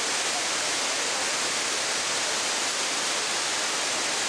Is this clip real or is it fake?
real